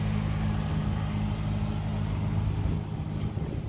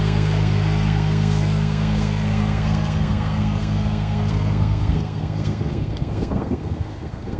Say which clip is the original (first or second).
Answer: first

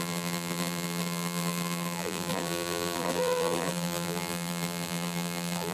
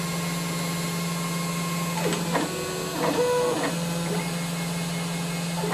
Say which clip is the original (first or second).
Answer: second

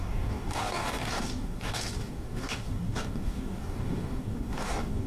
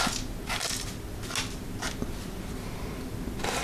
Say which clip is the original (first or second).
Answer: second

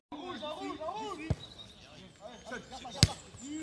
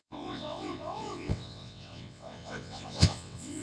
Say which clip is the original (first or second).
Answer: first